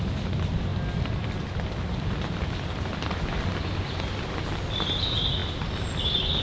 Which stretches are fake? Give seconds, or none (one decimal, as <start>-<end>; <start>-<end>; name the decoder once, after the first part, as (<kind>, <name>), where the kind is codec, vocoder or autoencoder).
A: none